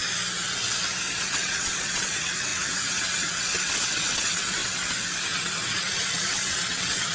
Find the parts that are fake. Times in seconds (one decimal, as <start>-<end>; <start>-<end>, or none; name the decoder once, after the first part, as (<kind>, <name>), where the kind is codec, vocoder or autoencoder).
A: 1.2-4.6 (vocoder, WaveNeXt); 5.3-7.1